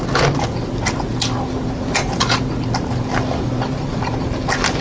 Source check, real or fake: real